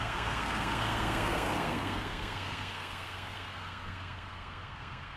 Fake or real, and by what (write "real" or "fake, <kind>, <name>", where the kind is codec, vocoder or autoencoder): fake, codec, SNAC